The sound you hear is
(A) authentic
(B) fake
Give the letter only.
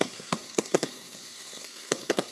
B